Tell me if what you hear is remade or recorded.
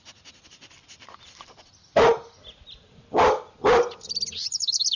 recorded